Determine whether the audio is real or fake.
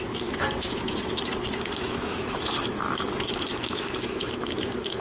fake